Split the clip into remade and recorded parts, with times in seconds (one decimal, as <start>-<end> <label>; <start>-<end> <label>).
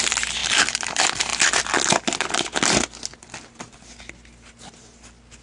0.0-5.4 recorded